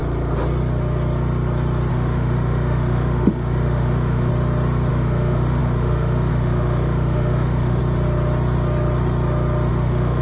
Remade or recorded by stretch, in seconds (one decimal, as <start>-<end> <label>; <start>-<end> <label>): 0.0-1.9 recorded; 1.9-4.3 remade; 4.3-4.9 recorded; 4.9-7.8 remade; 7.8-9.7 recorded; 9.7-10.2 remade